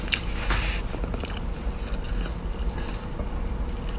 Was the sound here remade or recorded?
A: recorded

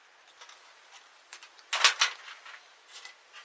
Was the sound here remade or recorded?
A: recorded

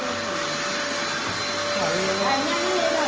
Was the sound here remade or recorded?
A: recorded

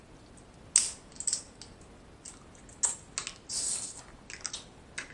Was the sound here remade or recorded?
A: recorded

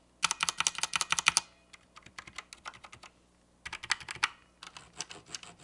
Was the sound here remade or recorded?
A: recorded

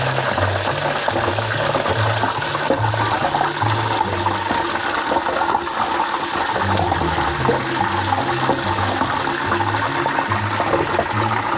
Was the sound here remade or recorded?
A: recorded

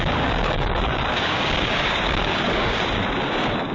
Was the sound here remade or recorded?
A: remade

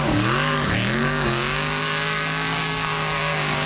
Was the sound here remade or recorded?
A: remade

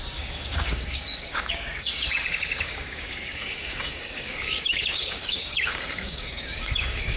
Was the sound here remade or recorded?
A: remade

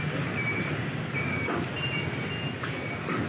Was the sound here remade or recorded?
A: recorded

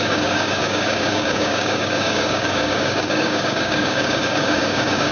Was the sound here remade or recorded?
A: remade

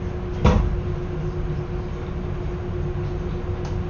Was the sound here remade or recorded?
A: recorded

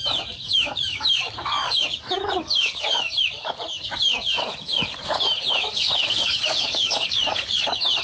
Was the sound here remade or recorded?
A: remade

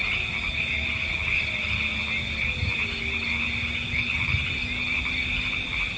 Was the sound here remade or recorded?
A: recorded